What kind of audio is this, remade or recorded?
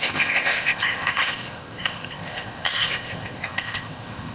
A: remade